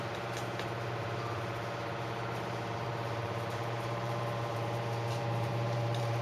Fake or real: fake